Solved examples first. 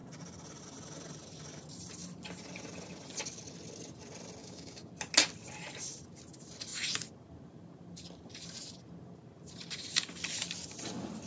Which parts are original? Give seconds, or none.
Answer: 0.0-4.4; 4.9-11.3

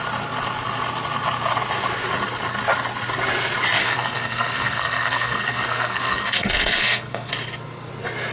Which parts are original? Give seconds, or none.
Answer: 0.0-3.8; 7.3-8.3

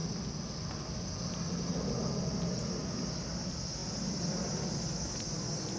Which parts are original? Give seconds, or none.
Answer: 0.0-5.8

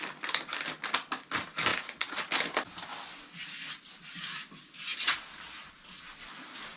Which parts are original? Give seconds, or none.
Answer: 0.0-1.7; 2.3-6.8

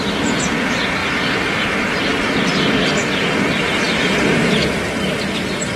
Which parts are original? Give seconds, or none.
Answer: 0.0-1.0; 4.5-5.8

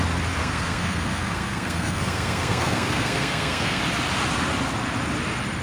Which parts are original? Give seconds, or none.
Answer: 0.0-0.4; 3.8-5.6

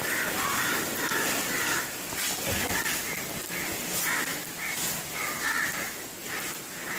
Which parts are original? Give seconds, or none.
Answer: 0.0-7.0